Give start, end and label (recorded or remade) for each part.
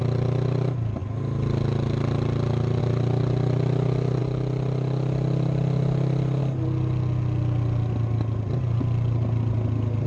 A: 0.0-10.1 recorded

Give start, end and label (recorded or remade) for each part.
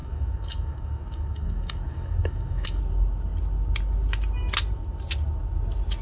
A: 0.0-2.8 remade; 2.8-6.0 recorded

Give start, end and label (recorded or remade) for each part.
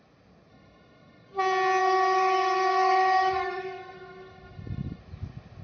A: 0.0-0.5 recorded; 0.5-1.4 remade; 1.4-1.8 recorded; 1.8-5.0 remade; 5.0-5.6 recorded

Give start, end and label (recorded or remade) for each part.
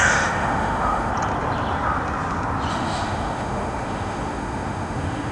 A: 0.0-1.1 remade; 1.1-2.7 recorded; 2.7-5.3 remade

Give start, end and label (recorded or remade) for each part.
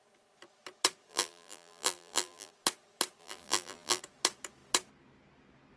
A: 0.0-1.1 recorded; 1.1-2.5 remade; 2.5-3.2 recorded; 3.2-4.0 remade; 4.0-5.8 recorded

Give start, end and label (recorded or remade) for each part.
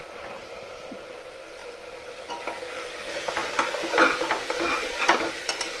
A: 0.0-5.8 recorded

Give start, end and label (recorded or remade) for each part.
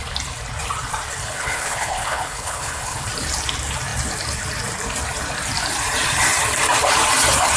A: 0.0-1.2 recorded; 1.2-3.1 remade; 3.1-7.6 recorded